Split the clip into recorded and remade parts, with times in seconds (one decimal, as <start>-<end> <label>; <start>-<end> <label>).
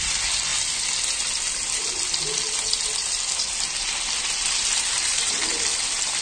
0.0-6.2 recorded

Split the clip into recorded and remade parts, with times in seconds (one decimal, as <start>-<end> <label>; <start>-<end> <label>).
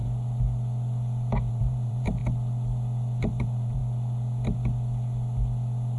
0.0-1.5 recorded; 1.5-2.2 remade; 2.2-3.4 recorded; 3.4-3.8 remade; 3.8-6.0 recorded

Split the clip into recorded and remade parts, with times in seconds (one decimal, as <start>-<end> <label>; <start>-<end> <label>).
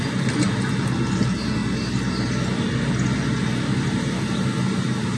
0.0-5.2 recorded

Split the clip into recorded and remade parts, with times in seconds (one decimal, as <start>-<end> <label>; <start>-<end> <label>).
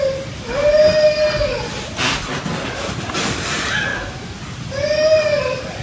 0.0-3.9 recorded; 3.9-4.4 remade; 4.4-5.8 recorded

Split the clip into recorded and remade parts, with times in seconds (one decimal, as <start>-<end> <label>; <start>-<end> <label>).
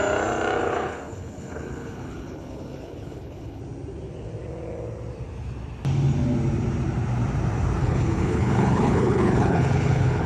0.0-0.6 recorded; 0.6-3.6 remade; 3.6-7.8 recorded; 7.8-10.3 remade